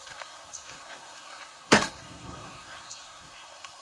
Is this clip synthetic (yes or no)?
yes